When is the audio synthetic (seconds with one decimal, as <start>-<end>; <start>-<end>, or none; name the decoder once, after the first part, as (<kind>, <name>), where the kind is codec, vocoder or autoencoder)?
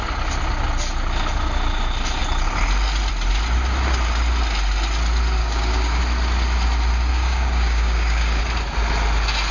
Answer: 5.4-6.0 (codec, DAC); 7.1-8.4